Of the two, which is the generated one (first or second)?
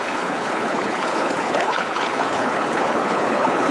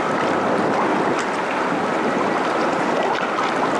first